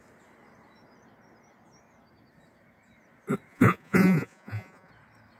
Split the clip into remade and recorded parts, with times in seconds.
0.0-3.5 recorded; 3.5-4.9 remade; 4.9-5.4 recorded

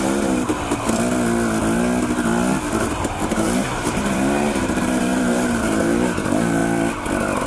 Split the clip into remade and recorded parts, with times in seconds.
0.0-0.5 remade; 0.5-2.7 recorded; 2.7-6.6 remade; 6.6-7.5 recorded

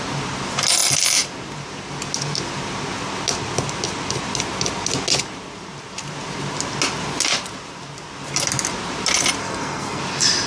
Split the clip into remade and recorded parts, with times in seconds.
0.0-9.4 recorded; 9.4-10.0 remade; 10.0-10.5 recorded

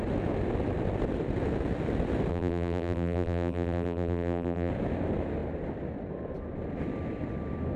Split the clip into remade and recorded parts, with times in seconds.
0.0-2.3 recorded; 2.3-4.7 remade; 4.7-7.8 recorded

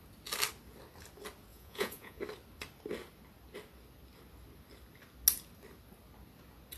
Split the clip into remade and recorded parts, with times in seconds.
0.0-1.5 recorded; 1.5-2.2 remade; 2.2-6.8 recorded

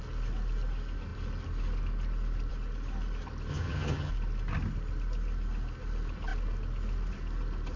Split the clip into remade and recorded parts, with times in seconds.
0.0-3.5 recorded; 3.5-4.1 remade; 4.1-7.8 recorded